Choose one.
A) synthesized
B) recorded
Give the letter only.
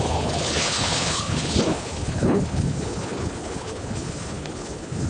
A